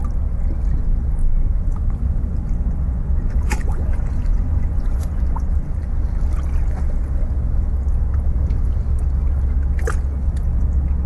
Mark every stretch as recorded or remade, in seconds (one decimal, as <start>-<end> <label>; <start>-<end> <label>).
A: 0.0-1.2 recorded; 1.2-5.9 remade; 5.9-11.1 recorded